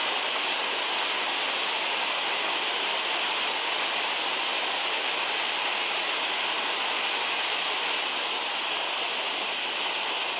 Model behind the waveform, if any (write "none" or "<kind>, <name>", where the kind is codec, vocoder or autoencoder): none